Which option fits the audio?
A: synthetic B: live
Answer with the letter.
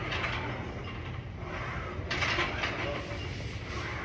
B